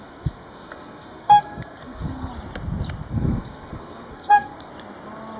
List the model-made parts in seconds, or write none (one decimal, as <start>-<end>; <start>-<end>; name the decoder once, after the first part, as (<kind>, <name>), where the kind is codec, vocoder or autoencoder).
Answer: 0.0-2.3 (codec, SNAC); 3.1-4.7